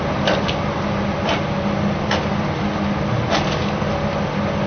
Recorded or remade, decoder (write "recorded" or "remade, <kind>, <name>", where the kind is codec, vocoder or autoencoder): recorded